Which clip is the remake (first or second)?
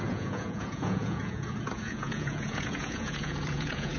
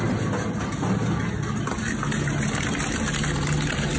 first